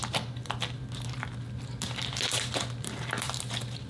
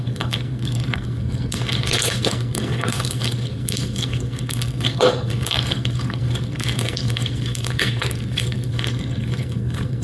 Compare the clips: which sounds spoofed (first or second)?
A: second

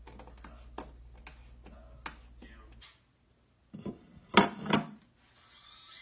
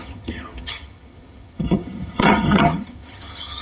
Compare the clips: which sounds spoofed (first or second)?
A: second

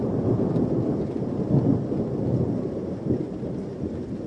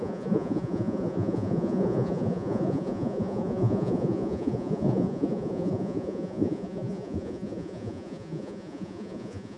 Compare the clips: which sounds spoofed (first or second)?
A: second